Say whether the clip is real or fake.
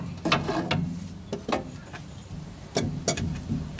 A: real